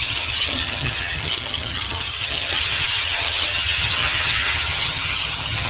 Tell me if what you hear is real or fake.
fake